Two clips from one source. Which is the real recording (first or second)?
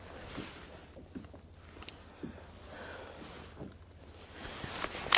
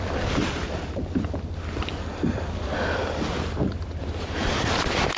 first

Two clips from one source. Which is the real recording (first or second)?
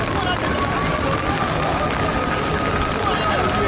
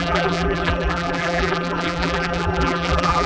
first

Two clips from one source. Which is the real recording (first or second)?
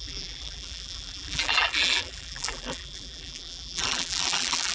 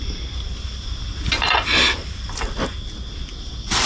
second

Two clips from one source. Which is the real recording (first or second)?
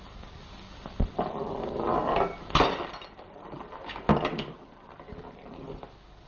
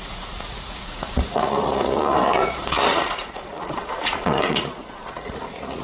first